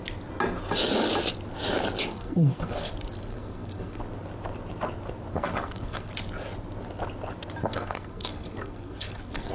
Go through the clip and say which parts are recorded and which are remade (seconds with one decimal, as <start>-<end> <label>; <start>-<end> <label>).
0.0-2.1 recorded; 2.1-2.9 remade; 2.9-3.3 recorded; 3.3-4.0 remade; 4.0-5.3 recorded; 5.3-6.1 remade; 6.1-7.6 recorded; 7.6-9.5 remade